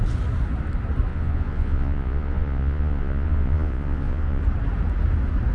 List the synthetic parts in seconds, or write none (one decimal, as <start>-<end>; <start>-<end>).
1.1-4.4